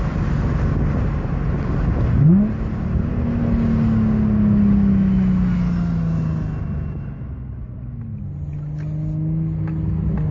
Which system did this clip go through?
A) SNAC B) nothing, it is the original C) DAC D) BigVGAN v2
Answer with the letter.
B